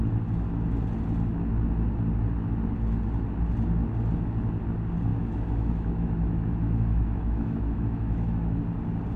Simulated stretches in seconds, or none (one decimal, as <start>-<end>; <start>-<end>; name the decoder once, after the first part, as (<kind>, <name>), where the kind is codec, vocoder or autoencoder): 5.1-8.6 (autoencoder, DAC-VAE)